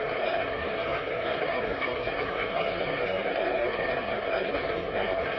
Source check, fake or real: fake